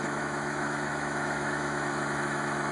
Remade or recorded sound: remade